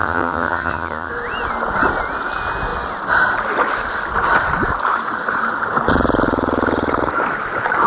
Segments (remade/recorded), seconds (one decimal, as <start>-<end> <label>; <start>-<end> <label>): 0.0-1.1 remade; 1.1-7.9 recorded